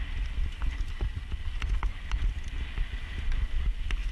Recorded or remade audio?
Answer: recorded